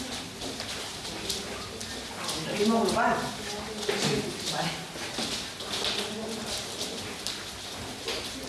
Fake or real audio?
real